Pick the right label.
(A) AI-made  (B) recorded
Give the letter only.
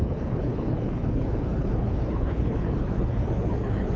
A